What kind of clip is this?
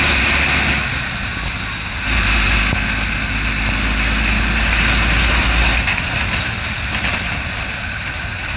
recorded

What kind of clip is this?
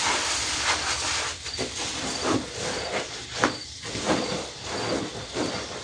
remade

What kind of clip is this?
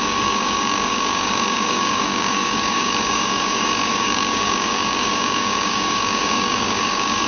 remade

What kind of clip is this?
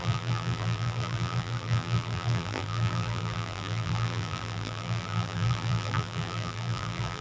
remade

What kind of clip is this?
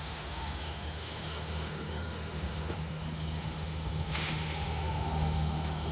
remade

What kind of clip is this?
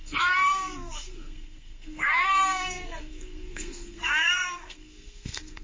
remade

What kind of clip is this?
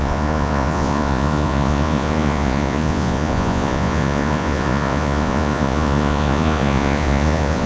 remade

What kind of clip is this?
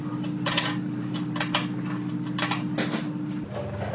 recorded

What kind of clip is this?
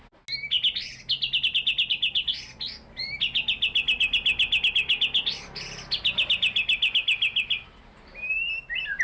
recorded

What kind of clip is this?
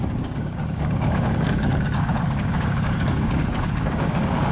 remade